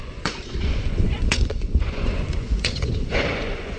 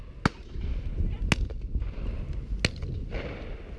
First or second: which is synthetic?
first